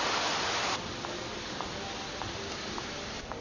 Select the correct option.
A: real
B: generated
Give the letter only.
A